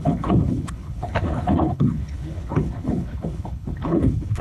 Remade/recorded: remade